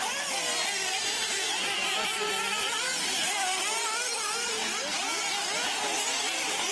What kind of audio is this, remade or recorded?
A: recorded